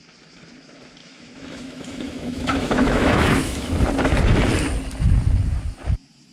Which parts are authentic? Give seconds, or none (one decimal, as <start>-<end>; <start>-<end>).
0.0-1.0; 3.7-6.3

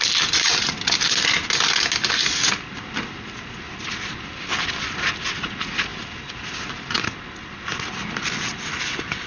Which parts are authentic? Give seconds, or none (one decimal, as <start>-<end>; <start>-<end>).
0.0-9.3